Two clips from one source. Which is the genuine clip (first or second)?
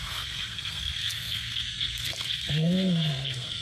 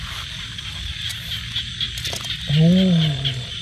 second